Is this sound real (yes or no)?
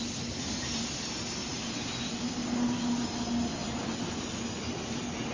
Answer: yes